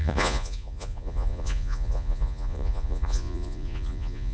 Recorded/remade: remade